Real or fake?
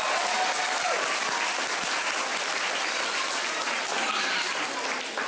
real